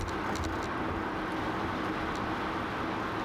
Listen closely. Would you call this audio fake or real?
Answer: real